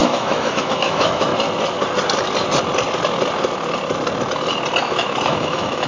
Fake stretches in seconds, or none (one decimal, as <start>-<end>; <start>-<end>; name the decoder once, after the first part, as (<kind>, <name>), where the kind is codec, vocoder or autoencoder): 0.0-1.3 (autoencoder, DAC-VAE); 4.8-5.9